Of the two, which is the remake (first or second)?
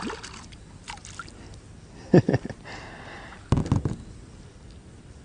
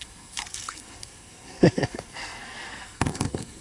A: second